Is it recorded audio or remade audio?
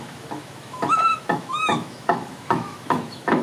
remade